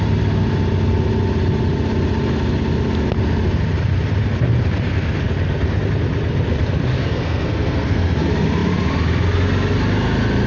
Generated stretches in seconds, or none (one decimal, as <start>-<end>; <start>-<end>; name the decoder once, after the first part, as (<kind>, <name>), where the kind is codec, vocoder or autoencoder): 7.0-8.0 (codec, SNAC)